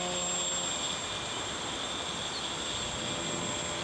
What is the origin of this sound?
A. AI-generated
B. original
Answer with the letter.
B